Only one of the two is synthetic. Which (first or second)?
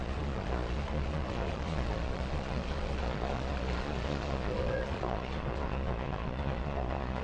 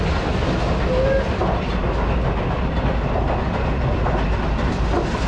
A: first